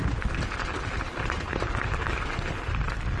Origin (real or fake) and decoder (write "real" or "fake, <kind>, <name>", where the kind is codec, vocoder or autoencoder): real